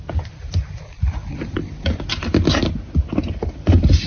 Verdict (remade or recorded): remade